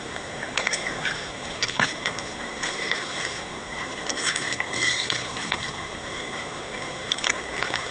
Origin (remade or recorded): remade